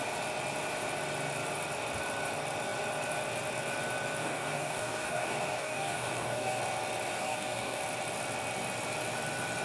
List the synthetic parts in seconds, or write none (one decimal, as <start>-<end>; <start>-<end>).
4.2-6.6; 7.1-7.8